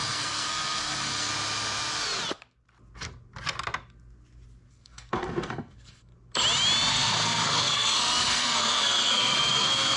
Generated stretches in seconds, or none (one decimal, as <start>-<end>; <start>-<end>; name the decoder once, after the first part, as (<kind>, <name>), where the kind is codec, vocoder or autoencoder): 0.0-1.3 (codec, SNAC); 4.7-6.1; 6.9-10.0